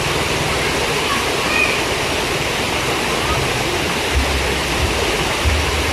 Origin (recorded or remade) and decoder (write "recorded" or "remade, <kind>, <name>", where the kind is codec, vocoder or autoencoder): recorded